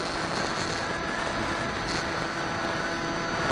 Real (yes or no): yes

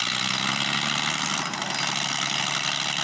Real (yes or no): yes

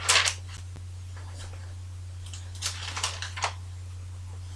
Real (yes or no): yes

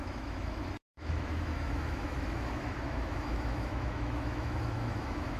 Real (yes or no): no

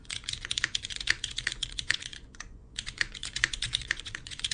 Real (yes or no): no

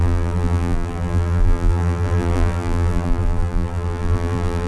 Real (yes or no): no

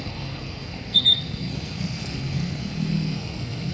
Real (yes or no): no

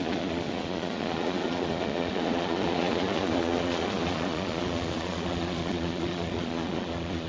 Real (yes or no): no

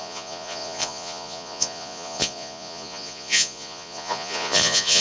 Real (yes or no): no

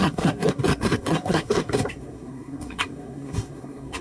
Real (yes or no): no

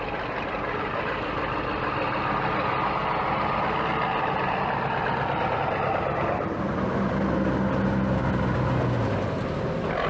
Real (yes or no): yes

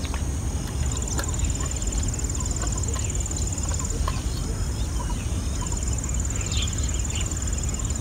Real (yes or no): yes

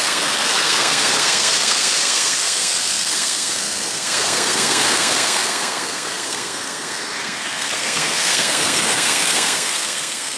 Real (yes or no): no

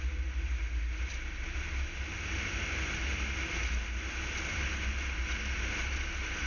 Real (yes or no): yes